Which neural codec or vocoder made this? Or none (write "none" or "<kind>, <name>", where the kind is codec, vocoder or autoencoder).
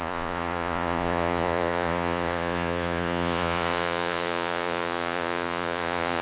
vocoder, Vocos